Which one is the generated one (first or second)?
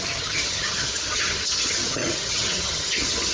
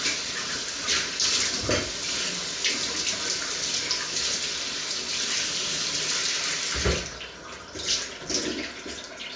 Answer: first